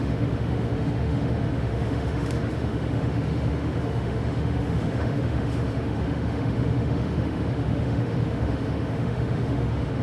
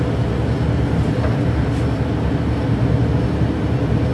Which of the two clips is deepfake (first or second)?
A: first